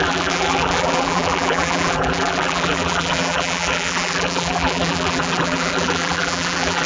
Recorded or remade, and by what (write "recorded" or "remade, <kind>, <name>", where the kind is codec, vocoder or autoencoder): remade, vocoder, BigVGAN v2